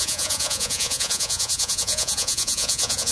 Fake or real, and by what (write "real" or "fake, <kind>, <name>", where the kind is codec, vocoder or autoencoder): fake, vocoder, Vocos